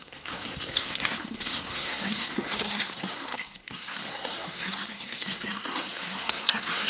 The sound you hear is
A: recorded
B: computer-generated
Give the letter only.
B